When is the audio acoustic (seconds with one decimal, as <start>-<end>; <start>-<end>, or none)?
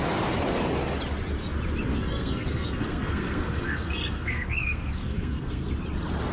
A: 0.0-1.9; 5.7-6.3